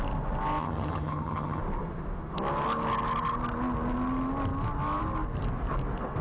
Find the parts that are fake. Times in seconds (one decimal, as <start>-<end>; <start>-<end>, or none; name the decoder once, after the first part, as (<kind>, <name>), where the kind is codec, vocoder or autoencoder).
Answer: 0.6-1.6 (vocoder, HiFi-GAN)